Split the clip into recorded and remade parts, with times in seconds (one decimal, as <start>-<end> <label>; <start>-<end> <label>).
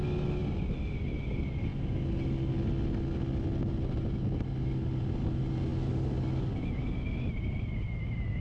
0.0-8.4 recorded